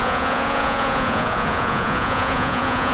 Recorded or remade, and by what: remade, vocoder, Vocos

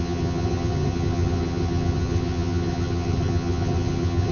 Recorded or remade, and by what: remade, vocoder, HiFi-GAN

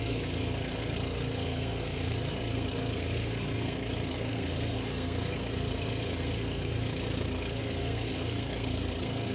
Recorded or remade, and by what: remade, codec, SNAC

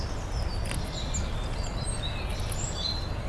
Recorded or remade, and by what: recorded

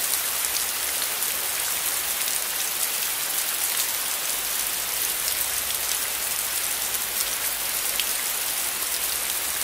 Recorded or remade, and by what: recorded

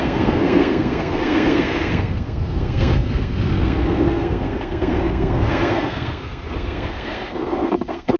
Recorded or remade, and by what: remade, codec, SNAC